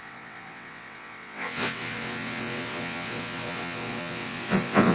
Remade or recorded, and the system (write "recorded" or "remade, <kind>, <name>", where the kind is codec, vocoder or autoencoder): remade, vocoder, WaveNeXt